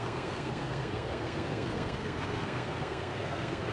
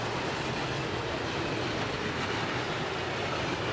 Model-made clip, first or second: first